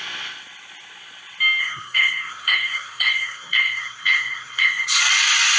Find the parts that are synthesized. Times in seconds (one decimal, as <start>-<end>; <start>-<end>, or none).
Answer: 1.6-5.0